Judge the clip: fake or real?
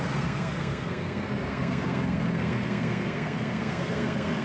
fake